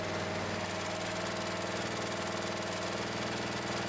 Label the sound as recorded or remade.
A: recorded